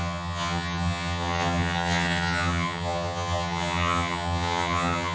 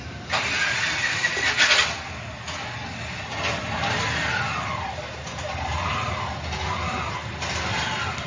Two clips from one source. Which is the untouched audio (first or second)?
second